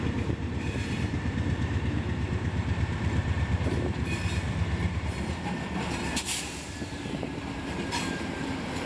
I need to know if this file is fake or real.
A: fake